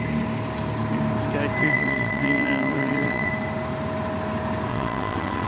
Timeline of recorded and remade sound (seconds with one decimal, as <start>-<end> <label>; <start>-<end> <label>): 0.0-1.6 recorded; 1.6-3.3 remade; 3.3-4.7 recorded; 4.7-5.5 remade